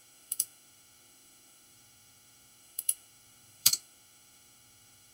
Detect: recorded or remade remade